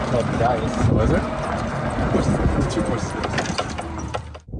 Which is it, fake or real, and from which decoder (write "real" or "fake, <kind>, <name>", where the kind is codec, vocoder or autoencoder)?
real